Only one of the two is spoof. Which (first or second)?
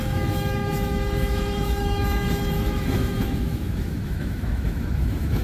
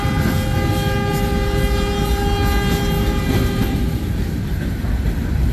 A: first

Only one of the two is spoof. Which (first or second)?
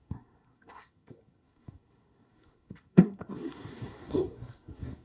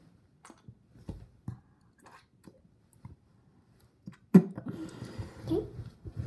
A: first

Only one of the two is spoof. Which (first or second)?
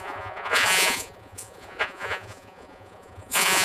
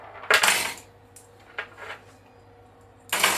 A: first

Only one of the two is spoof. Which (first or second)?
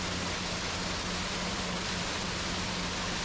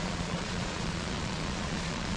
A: second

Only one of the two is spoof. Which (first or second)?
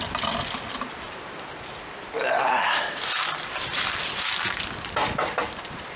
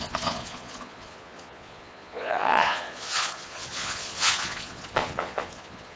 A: second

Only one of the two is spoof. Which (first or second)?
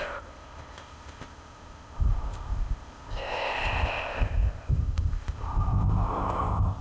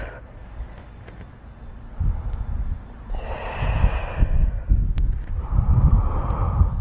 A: first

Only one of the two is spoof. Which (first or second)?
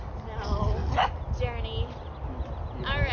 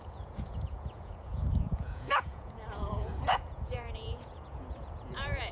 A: second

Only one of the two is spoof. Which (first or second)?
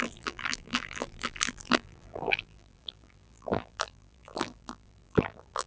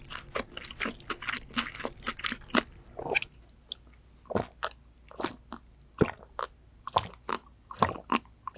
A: first